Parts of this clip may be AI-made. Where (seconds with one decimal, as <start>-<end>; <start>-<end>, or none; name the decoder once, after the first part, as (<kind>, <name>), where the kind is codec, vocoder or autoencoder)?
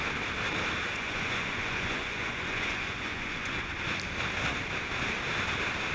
0.9-3.7 (vocoder, Vocos)